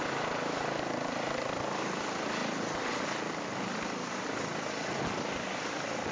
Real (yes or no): yes